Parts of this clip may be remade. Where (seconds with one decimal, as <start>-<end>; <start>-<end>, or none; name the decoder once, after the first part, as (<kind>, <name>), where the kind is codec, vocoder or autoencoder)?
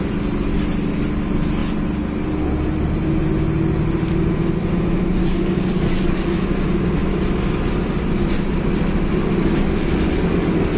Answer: 5.2-6.3 (codec, DAC)